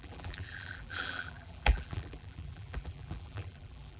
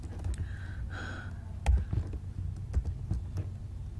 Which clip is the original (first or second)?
second